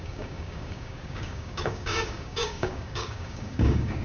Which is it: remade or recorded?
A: remade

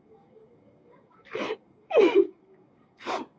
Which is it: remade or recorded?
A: remade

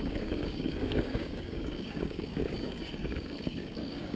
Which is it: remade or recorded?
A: remade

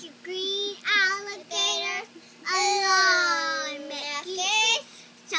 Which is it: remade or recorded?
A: recorded